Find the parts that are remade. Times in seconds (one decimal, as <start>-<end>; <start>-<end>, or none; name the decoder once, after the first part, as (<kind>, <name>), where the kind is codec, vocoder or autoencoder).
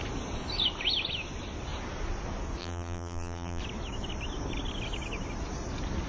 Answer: 2.6-3.6 (vocoder, BigVGAN v2)